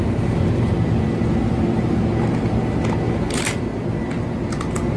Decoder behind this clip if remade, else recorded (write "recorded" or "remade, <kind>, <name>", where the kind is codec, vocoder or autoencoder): recorded